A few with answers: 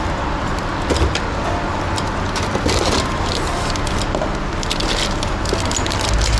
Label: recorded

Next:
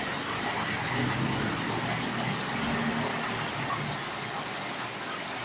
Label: recorded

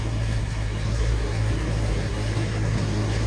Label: remade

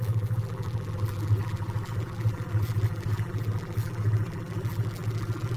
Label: remade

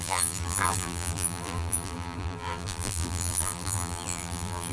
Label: remade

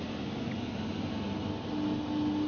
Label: recorded